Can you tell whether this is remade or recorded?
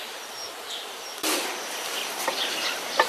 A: remade